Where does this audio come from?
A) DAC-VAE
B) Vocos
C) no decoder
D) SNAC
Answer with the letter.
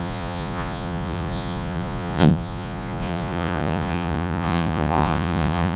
B